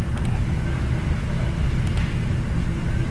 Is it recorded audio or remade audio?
recorded